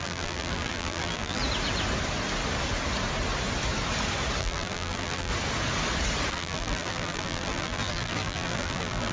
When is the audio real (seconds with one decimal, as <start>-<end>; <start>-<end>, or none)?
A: 1.4-4.4; 5.3-6.3